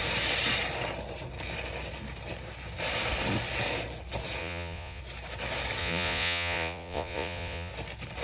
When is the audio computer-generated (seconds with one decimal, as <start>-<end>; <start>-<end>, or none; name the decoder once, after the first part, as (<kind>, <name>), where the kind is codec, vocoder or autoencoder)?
4.4-5.0 (vocoder, Vocos); 5.8-7.7